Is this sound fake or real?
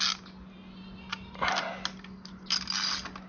real